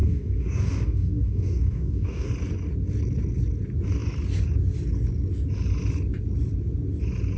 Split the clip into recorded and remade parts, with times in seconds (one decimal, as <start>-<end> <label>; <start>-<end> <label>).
0.0-2.3 remade; 2.3-7.4 recorded